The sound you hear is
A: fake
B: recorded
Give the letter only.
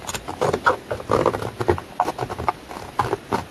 B